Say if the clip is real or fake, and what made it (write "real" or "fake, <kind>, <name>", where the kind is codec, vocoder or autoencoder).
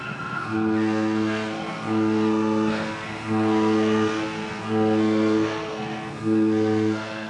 fake, codec, SNAC